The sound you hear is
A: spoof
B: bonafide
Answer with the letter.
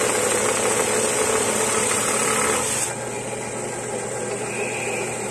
B